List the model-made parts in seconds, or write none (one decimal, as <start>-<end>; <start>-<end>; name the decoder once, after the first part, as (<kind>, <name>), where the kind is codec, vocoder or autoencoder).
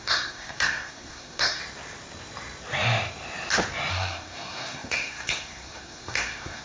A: 0.0-1.6 (codec, SNAC); 3.9-6.6